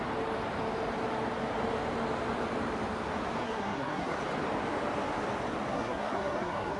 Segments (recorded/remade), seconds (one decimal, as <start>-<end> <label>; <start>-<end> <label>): 0.0-3.4 recorded; 3.4-4.2 remade; 4.2-5.7 recorded; 5.7-6.8 remade